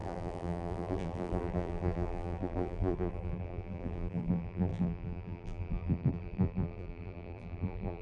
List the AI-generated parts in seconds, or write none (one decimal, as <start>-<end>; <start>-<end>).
0.0-8.0